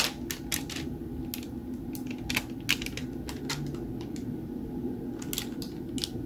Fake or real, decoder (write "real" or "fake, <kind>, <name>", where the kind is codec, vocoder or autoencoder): real